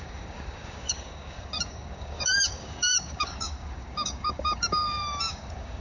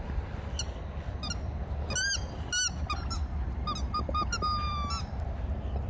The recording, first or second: second